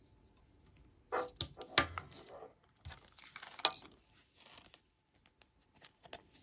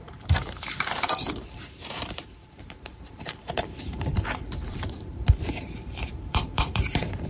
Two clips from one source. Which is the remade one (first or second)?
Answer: second